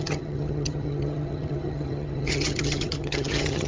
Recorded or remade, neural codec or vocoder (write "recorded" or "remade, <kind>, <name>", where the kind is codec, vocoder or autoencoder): remade, vocoder, HiFi-GAN